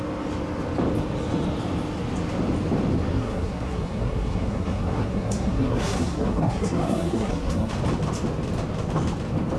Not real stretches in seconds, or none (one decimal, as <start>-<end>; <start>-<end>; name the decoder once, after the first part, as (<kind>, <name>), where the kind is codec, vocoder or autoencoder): 3.1-7.7 (codec, SNAC)